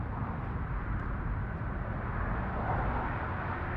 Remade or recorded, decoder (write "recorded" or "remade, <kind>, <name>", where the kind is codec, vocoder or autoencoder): recorded